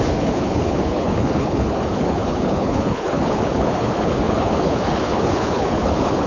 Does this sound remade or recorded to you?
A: remade